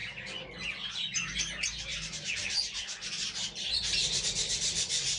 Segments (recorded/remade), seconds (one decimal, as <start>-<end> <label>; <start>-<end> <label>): 0.0-1.9 recorded; 1.9-5.2 remade